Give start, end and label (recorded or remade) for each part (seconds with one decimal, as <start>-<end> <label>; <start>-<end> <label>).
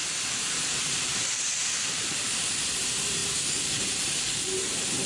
0.0-0.6 recorded; 0.6-5.1 remade